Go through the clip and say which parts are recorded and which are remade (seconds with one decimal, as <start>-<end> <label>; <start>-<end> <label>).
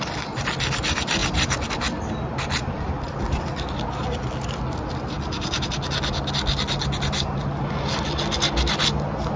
0.0-9.4 recorded